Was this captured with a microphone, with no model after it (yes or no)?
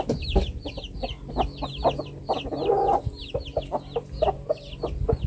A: yes